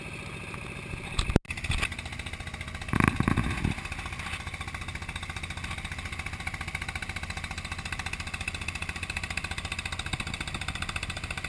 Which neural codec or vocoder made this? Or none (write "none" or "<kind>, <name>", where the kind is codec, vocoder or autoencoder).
none